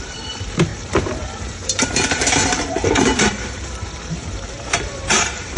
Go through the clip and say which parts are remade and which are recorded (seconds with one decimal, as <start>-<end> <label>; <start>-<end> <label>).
0.0-5.6 remade